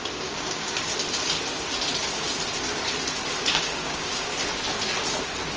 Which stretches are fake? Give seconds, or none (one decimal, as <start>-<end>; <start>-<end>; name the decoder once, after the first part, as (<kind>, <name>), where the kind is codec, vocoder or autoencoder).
0.0-0.9 (codec, DAC); 3.6-4.3